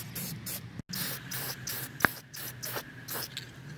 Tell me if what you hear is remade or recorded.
recorded